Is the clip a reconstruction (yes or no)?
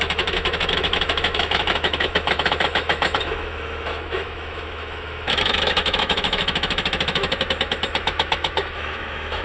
yes